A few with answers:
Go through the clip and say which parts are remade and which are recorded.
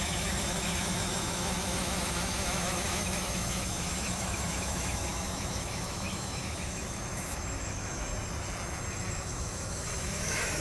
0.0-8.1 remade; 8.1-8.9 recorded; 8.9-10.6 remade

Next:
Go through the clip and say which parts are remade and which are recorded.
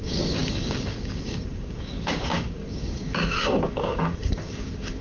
0.0-5.0 remade